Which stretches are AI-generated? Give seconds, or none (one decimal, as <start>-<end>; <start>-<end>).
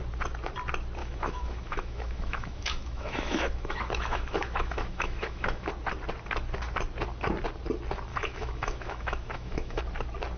1.0-5.7; 8.1-9.8